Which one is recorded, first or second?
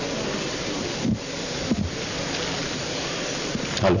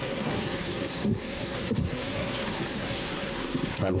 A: first